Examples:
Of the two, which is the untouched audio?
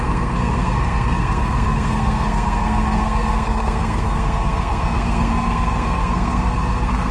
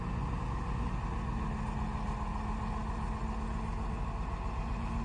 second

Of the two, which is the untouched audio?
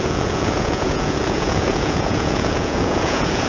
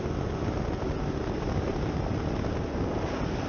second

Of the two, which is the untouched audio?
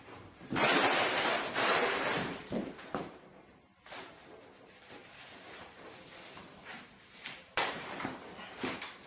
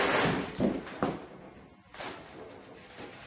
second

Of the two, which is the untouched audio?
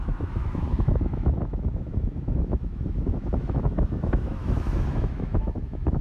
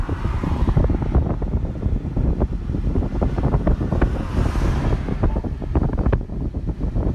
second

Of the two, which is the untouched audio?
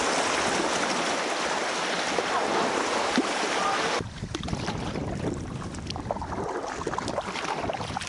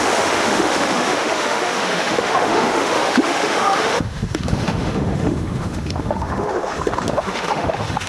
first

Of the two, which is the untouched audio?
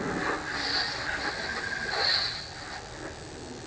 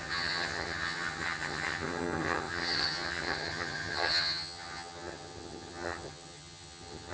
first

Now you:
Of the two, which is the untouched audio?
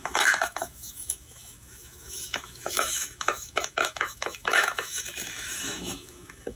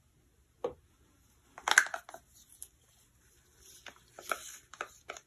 second